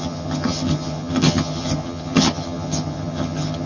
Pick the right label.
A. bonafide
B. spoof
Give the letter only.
B